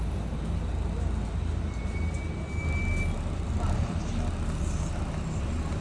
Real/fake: real